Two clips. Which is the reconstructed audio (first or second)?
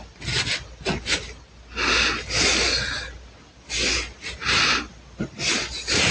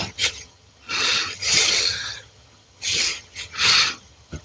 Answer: second